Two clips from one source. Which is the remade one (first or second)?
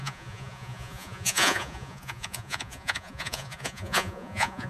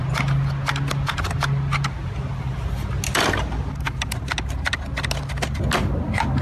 first